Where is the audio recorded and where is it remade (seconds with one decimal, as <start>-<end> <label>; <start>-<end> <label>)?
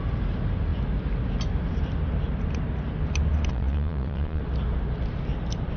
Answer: 0.0-3.5 recorded; 3.5-4.4 remade; 4.4-5.8 recorded